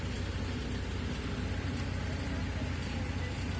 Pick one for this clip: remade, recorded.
recorded